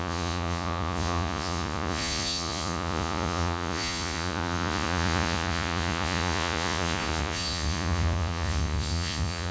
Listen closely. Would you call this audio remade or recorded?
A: remade